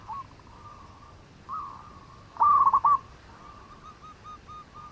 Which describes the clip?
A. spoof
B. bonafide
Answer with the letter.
B